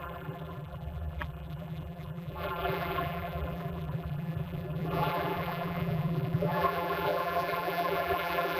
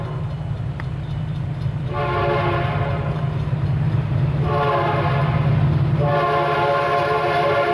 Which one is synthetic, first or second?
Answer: first